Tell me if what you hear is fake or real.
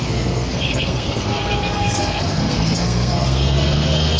fake